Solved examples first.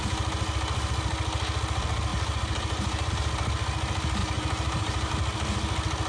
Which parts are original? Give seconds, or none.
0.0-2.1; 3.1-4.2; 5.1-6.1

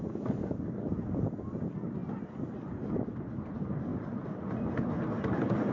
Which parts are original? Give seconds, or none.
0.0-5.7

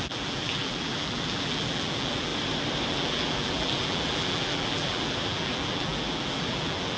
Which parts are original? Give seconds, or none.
2.3-2.9

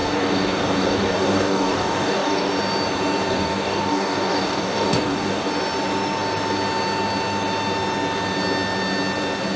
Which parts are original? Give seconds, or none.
2.5-3.3; 5.5-9.6

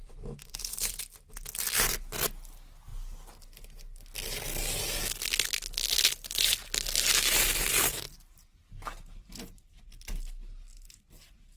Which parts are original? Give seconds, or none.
1.0-11.6